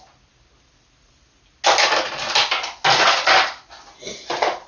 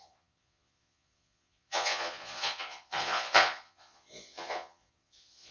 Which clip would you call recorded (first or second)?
first